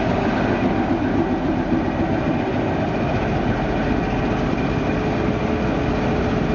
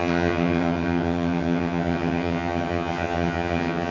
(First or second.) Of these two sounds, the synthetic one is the second